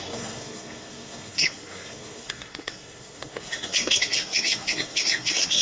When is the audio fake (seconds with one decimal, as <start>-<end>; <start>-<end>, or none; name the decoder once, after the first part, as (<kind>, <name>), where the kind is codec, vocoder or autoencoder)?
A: 0.0-5.6 (codec, SNAC)